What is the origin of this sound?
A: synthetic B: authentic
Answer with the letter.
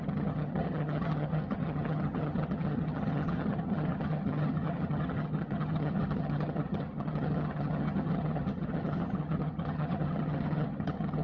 A